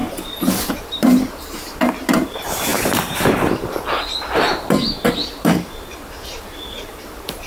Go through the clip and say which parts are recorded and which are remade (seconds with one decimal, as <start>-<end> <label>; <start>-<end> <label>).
0.0-0.7 recorded; 0.7-7.5 remade